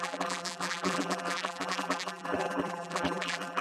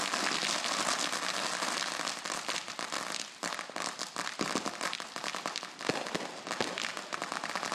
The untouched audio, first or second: second